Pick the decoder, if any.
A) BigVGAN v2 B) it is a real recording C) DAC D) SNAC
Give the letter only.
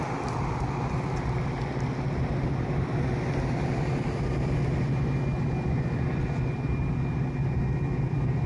B